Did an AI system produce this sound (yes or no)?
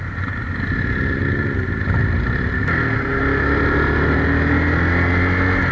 no